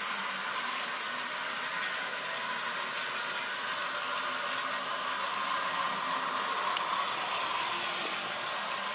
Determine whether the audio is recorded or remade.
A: recorded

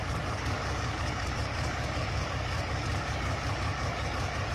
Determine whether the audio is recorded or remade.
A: remade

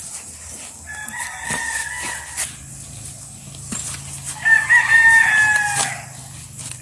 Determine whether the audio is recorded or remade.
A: recorded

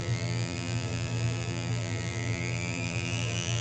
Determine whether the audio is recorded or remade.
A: remade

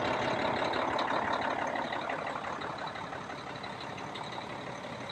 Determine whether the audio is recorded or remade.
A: recorded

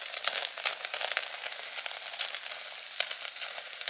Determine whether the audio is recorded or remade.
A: recorded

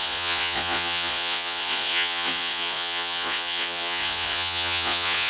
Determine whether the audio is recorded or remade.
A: remade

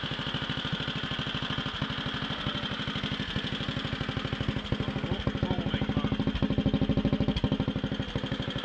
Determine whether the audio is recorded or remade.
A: recorded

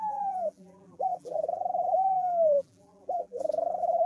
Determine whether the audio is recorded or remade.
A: remade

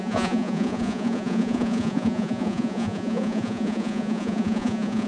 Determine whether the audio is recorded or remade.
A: remade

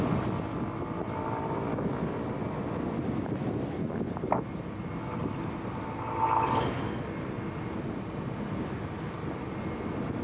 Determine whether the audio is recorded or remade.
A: recorded